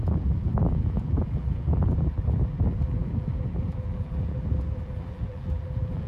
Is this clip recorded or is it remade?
remade